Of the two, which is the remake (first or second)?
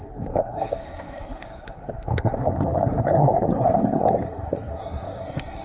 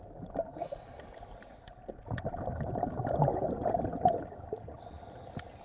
first